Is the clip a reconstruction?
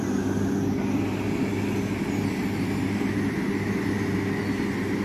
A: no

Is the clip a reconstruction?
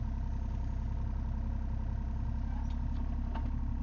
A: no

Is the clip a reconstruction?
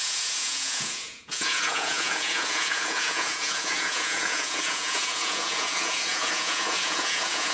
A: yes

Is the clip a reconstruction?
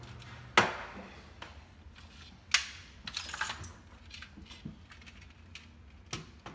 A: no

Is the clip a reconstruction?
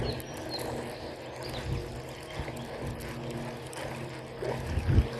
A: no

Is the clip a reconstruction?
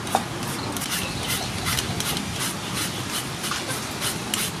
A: no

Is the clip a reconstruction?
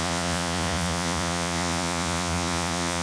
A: yes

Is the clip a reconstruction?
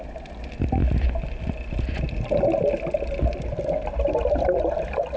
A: no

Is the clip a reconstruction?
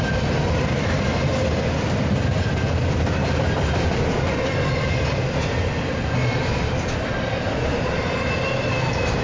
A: no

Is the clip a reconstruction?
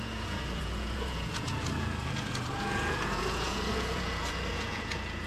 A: yes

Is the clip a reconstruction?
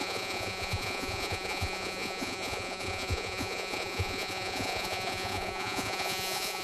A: yes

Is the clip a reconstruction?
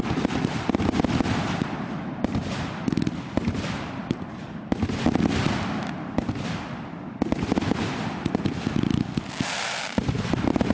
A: no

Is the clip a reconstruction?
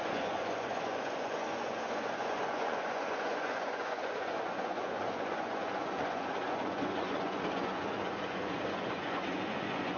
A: yes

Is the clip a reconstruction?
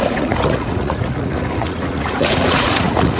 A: yes